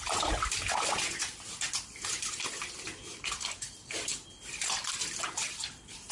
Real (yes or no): yes